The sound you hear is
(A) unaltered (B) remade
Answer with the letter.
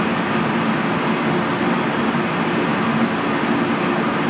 A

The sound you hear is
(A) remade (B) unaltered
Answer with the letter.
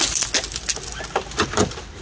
B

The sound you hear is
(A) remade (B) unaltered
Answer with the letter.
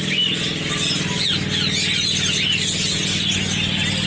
B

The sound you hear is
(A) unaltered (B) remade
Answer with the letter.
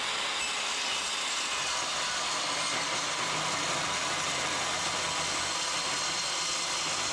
A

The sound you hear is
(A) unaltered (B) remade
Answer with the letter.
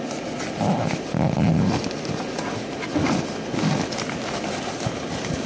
A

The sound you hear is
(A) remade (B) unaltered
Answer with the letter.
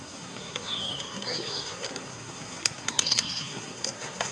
A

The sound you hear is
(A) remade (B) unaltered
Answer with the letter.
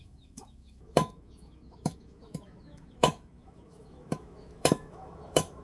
A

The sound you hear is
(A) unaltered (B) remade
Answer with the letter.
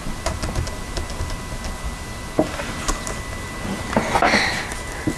A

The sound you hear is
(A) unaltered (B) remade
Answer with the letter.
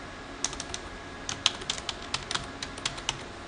A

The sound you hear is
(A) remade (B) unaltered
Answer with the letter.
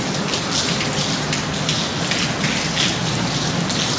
B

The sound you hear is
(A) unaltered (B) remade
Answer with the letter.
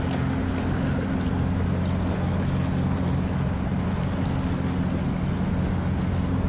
A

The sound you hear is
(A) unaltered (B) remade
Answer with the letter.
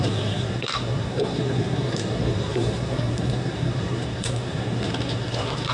B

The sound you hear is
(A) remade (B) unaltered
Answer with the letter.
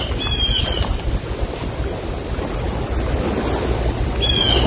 B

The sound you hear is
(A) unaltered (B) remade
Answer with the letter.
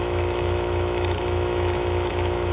B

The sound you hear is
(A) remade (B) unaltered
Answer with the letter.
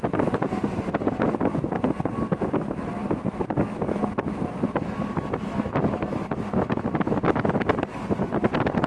B